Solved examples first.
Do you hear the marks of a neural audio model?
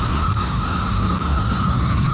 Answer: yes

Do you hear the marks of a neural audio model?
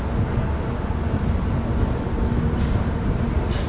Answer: no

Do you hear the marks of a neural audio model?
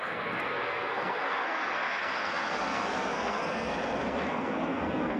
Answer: yes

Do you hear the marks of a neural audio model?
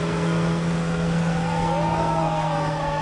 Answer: yes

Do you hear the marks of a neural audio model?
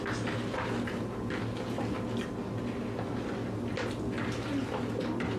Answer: no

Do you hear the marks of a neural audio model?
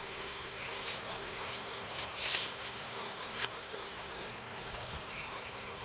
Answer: yes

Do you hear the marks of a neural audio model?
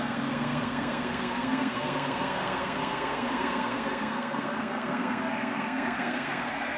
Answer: yes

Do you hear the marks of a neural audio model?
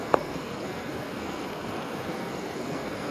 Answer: yes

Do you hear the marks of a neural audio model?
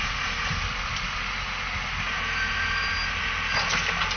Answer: no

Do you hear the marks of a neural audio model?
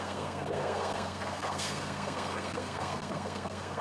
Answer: yes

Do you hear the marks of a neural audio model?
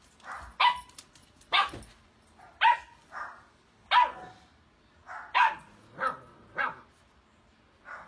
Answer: no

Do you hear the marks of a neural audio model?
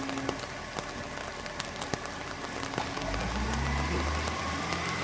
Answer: no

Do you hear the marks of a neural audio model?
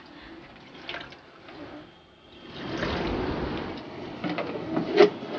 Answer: no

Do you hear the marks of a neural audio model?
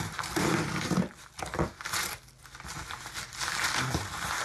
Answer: no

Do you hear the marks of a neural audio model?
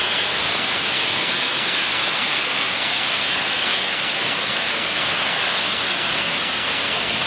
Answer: yes